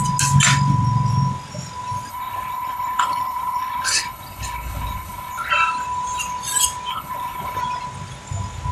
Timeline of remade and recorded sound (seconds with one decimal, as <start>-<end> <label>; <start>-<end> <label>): 0.0-2.1 recorded; 2.1-5.5 remade; 5.5-6.9 recorded; 6.9-7.6 remade; 7.6-8.7 recorded